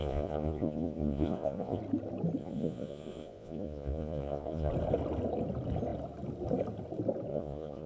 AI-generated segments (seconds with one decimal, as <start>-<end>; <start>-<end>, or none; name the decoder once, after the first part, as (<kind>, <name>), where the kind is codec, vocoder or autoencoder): 0.0-1.8 (vocoder, Vocos); 2.4-4.7; 7.3-7.9